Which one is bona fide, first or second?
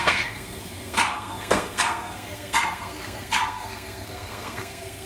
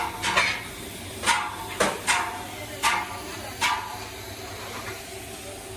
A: second